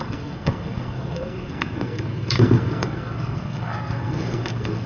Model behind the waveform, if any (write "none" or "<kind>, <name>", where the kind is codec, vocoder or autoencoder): codec, SNAC